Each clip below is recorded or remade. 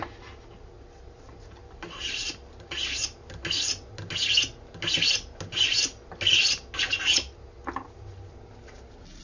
recorded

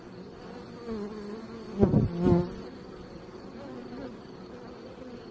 recorded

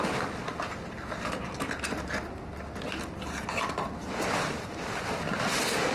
recorded